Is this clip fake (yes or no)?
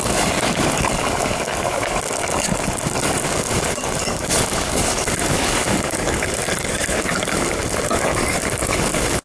yes